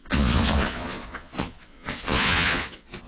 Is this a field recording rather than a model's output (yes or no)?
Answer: no